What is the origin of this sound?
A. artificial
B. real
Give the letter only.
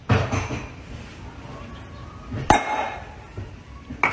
B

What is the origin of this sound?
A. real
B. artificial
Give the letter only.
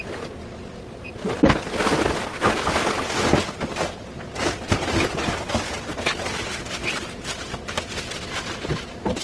A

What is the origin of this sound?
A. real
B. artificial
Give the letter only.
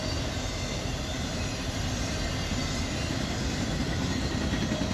A